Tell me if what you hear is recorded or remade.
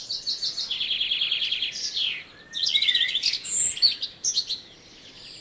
recorded